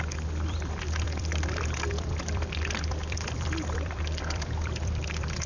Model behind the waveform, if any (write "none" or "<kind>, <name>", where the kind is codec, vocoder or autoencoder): vocoder, BigVGAN v2